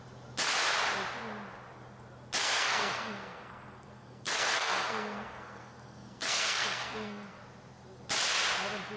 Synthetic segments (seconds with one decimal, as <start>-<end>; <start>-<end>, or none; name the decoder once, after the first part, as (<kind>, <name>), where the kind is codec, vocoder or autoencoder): 2.4-7.4 (codec, SNAC)